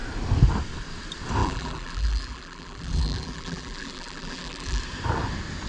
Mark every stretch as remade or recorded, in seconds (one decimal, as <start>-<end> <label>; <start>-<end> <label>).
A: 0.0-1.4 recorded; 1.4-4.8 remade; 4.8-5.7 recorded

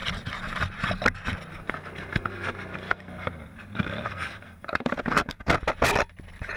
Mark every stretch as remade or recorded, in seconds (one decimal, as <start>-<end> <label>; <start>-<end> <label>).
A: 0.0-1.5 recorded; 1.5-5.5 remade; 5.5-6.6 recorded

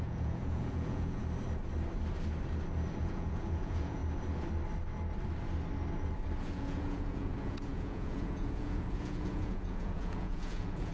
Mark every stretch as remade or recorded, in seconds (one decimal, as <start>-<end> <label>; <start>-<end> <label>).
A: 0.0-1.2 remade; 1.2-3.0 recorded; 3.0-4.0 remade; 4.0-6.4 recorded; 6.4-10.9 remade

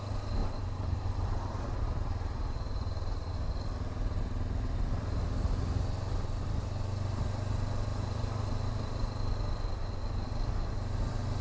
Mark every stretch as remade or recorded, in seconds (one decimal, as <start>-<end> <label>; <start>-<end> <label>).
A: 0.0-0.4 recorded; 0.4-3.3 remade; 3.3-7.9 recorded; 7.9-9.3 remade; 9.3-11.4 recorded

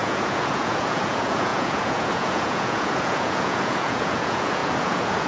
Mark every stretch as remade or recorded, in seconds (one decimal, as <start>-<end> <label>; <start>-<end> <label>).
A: 0.0-5.3 remade

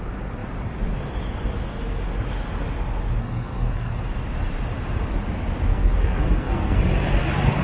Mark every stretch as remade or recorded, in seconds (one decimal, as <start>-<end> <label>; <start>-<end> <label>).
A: 0.0-3.2 recorded; 3.2-4.0 remade; 4.0-5.7 recorded; 5.7-6.8 remade; 6.8-7.6 recorded